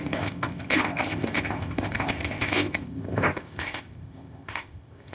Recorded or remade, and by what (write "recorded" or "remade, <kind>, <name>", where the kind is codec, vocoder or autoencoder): remade, codec, ZipCodec